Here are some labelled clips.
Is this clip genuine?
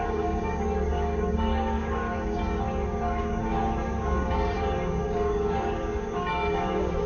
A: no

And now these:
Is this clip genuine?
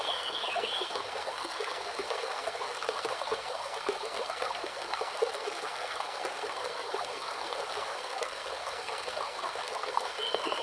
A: no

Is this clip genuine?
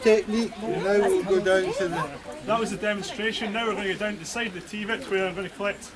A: yes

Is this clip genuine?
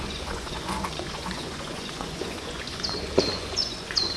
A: no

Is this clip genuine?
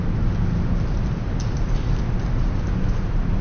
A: yes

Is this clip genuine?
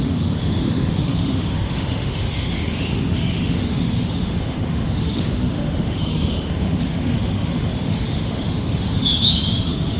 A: no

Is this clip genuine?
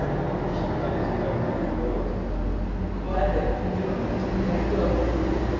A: yes